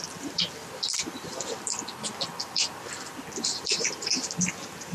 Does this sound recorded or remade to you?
recorded